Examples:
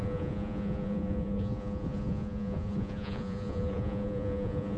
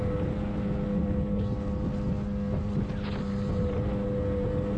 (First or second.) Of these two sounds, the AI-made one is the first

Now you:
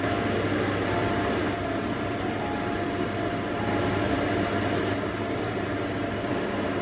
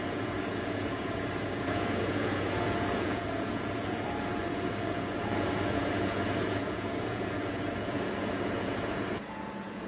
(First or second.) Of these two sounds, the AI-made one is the second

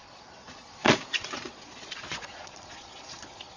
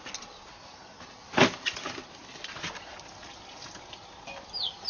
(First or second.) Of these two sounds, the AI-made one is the first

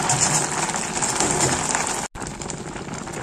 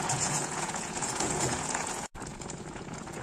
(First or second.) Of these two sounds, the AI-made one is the second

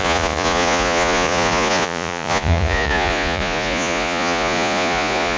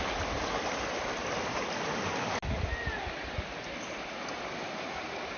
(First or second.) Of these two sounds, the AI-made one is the first